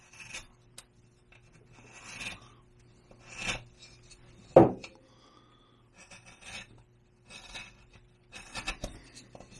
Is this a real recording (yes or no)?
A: yes